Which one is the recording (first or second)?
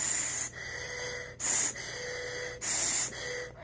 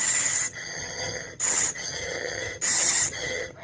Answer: first